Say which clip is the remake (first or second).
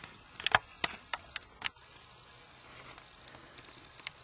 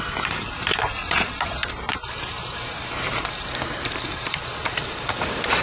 second